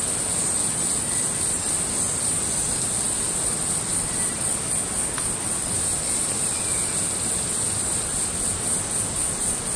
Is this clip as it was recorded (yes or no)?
yes